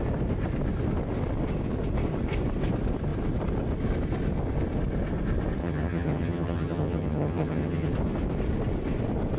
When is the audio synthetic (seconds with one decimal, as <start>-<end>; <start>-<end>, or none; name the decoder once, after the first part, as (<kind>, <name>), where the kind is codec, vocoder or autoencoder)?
5.6-7.9 (vocoder, HiFi-GAN)